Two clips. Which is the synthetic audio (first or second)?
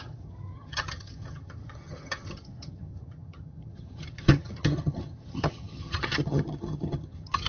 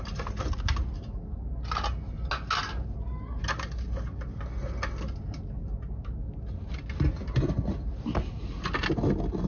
first